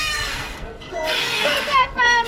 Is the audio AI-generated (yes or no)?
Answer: yes